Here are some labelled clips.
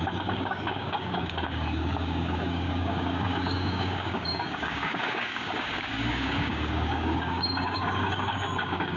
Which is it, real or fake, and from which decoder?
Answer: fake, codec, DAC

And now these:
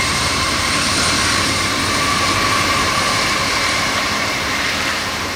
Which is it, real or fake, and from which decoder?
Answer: fake, vocoder, BigVGAN v2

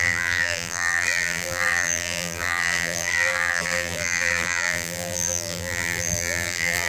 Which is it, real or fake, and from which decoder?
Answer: fake, vocoder, BigVGAN v2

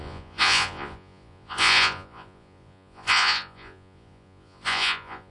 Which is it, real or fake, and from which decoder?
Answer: fake, vocoder, Vocos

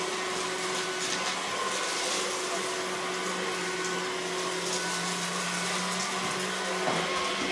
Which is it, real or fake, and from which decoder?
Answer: real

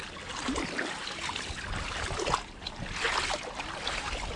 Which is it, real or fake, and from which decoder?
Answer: real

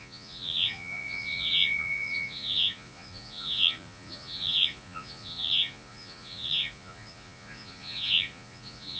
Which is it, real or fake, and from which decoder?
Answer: fake, vocoder, Vocos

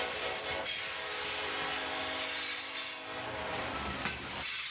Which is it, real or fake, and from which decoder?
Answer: real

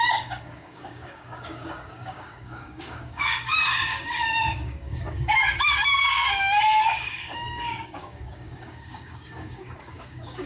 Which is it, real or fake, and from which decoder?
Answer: fake, codec, DAC